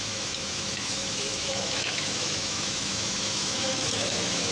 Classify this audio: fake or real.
fake